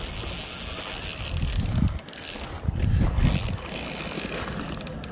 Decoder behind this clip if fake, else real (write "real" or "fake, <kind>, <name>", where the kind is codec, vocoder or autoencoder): real